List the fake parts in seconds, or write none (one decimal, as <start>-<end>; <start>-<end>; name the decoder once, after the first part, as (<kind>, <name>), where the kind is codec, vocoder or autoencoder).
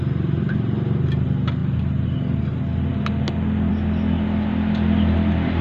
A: none